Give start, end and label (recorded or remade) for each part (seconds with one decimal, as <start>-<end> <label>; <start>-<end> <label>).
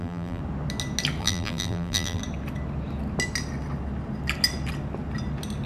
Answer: 0.0-0.4 remade; 0.4-1.2 recorded; 1.2-2.2 remade; 2.2-5.7 recorded